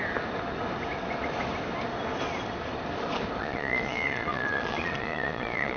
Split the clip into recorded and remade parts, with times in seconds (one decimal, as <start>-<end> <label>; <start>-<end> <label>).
0.0-3.4 recorded; 3.4-5.8 remade